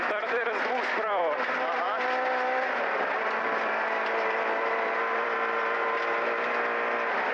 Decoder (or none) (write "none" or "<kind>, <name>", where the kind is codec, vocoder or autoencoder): vocoder, BigVGAN v2